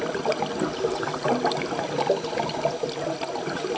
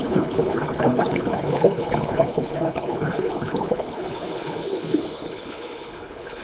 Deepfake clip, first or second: second